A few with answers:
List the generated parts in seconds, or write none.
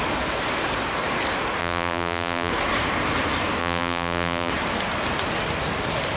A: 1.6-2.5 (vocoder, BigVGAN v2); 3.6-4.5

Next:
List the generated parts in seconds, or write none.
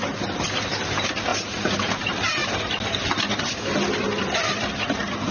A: none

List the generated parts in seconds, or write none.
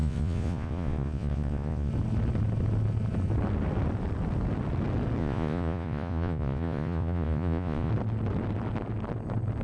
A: 0.0-1.9 (vocoder, Vocos); 5.2-7.9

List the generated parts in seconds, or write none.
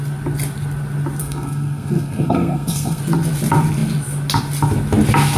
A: 1.2-3.0 (codec, SNAC)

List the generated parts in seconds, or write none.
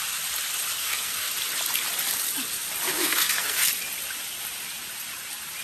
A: 0.8-1.3 (codec, SNAC); 2.9-3.7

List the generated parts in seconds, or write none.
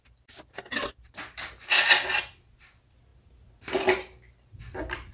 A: none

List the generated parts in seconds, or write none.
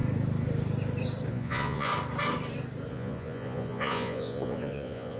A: 1.3-1.9 (vocoder, Vocos); 2.9-5.2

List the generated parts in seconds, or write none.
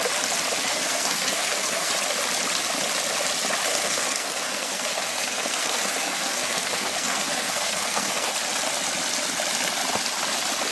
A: 0.7-1.9 (codec, SNAC); 3.7-8.3